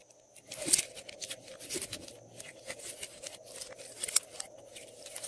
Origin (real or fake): real